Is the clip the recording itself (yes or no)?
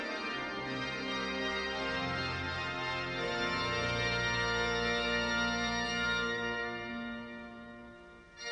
no